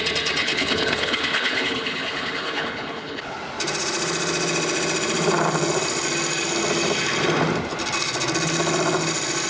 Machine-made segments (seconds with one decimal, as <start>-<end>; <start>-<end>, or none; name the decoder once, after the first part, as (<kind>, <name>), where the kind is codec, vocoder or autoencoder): 0.4-3.4 (codec, HILCodec)